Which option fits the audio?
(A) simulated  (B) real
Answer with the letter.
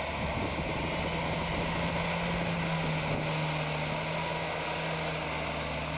B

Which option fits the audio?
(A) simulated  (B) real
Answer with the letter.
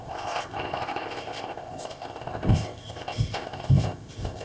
A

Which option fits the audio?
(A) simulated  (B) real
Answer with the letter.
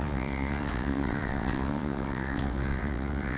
A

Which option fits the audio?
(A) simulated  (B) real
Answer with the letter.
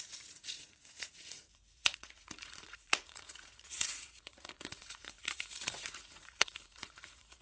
A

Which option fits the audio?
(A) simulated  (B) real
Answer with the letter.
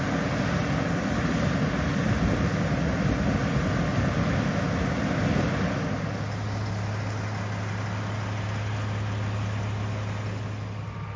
B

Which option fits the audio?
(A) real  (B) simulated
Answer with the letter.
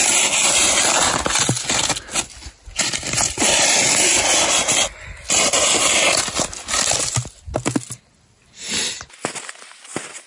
A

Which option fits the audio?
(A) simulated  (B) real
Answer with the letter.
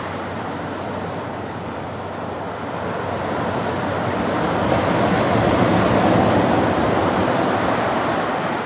B